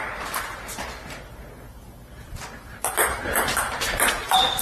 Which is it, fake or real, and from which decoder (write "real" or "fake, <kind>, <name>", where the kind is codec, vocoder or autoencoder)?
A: real